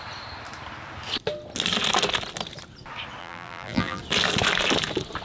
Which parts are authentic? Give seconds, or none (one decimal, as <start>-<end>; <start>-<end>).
0.0-3.2; 4.0-5.2